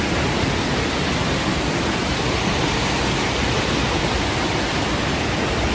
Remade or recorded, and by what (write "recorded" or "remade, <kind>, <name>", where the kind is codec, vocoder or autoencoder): recorded